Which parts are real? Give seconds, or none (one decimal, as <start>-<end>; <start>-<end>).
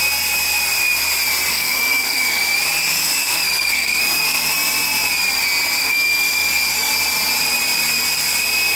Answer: 0.0-1.5; 2.4-3.3; 4.5-5.8; 6.9-8.8